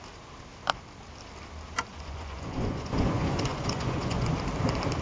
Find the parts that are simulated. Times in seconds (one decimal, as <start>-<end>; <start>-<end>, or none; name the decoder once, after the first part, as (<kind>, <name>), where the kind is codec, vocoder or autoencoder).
1.9-4.3 (vocoder, Vocos)